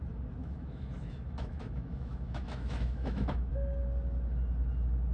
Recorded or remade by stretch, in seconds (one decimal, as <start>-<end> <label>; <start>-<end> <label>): 0.0-0.4 recorded; 0.4-3.5 remade; 3.5-5.1 recorded